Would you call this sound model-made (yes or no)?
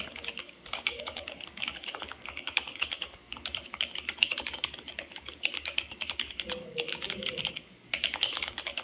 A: yes